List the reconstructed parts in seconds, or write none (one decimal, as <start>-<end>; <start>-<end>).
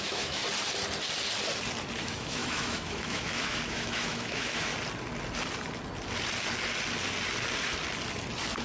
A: 0.0-0.4; 2.0-4.7